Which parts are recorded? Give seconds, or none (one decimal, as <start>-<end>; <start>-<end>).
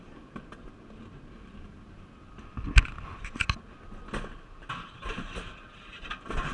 0.0-6.5